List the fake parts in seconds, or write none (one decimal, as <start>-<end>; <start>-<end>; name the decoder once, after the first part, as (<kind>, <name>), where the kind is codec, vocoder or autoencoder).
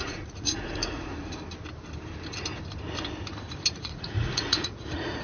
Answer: 0.0-1.1 (vocoder, Vocos); 3.7-5.2